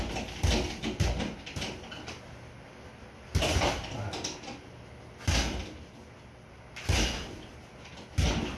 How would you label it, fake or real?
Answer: real